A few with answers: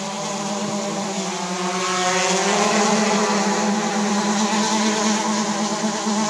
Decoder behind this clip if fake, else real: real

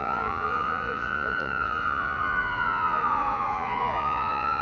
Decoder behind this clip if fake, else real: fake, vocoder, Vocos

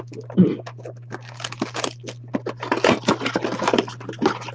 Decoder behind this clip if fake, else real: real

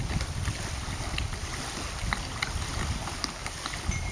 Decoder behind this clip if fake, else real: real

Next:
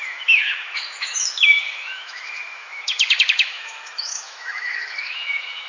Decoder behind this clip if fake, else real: fake, autoencoder, DAC-VAE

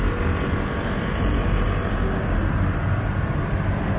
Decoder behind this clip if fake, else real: real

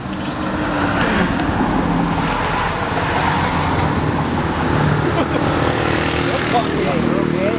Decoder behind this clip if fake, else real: real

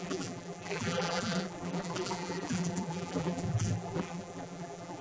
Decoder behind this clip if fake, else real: fake, vocoder, BigVGAN v2